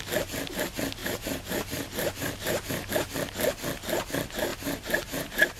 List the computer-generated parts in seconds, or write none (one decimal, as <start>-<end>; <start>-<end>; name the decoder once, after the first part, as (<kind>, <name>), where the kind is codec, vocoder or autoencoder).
1.0-2.9 (vocoder, BigVGAN v2); 4.5-5.6